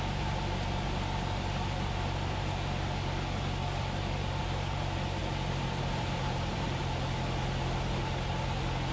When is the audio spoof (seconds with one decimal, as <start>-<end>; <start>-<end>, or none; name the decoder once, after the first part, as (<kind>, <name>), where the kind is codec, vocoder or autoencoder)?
3.6-4.5 (vocoder, BigVGAN v2); 5.2-6.8